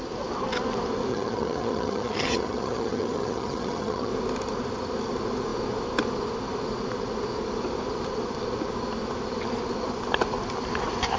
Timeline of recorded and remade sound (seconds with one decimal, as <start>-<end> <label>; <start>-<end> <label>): 0.0-1.1 recorded; 1.1-4.1 remade; 4.1-11.2 recorded